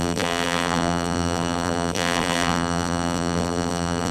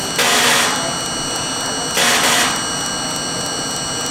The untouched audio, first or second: second